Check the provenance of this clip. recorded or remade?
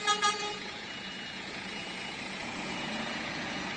remade